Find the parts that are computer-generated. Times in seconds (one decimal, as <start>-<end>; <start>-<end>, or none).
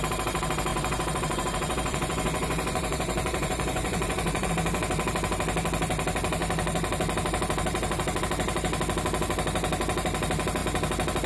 0.7-4.5